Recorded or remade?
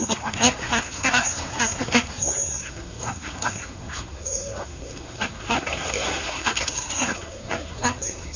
remade